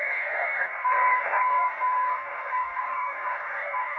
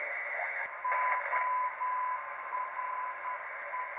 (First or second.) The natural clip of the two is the second